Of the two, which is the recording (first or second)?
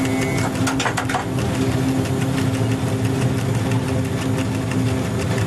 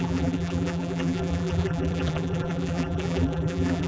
first